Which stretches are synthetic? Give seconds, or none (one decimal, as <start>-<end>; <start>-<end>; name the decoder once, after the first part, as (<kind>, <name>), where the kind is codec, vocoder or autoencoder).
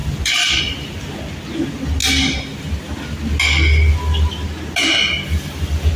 none